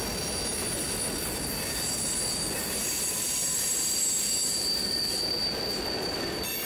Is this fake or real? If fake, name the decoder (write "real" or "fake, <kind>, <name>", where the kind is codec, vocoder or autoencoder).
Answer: real